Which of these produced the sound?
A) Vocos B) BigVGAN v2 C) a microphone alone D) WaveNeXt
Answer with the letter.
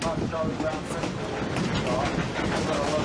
C